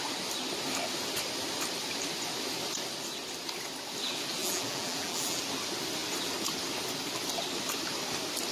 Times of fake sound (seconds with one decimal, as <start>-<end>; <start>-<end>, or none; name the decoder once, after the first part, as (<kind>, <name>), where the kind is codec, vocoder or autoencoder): 4.4-5.4 (vocoder, BigVGAN v2)